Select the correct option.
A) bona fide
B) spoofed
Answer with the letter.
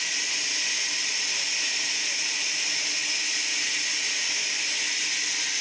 A